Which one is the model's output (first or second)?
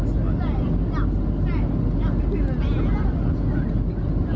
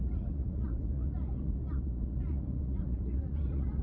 second